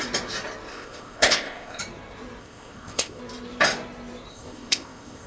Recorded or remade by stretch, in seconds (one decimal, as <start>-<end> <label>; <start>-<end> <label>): 0.0-0.7 recorded; 0.7-1.8 remade; 1.8-2.4 recorded; 2.4-3.2 remade; 3.2-4.3 recorded; 4.3-5.3 remade